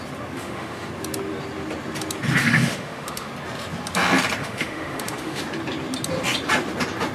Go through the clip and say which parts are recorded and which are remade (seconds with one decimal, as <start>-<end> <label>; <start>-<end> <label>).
0.0-0.4 recorded; 0.4-0.9 remade; 0.9-2.4 recorded; 2.4-3.3 remade; 3.3-4.4 recorded; 4.4-5.4 remade; 5.4-7.1 recorded